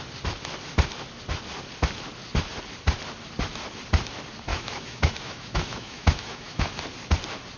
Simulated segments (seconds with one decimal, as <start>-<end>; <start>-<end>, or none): 4.5-6.8